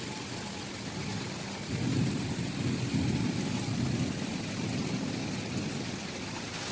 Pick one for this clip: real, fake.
real